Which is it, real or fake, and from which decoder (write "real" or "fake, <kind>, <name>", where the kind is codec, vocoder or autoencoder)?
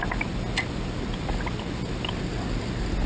real